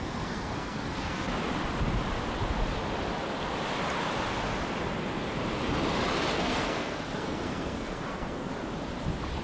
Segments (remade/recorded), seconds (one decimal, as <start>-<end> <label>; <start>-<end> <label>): 0.0-1.3 remade; 1.3-6.3 recorded; 6.3-8.5 remade; 8.5-9.4 recorded